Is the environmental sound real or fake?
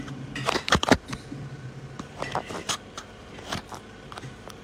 fake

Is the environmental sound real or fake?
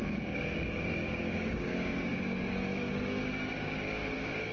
fake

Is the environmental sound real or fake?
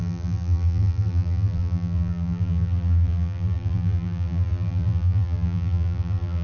fake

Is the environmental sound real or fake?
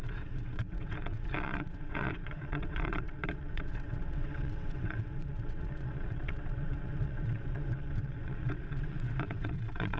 fake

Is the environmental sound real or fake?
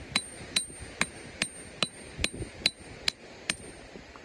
real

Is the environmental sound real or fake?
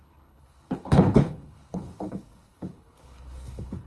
fake